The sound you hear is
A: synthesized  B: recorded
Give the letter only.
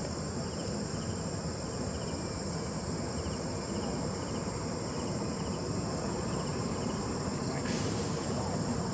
A